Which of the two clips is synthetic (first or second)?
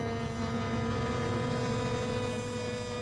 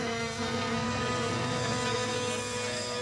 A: second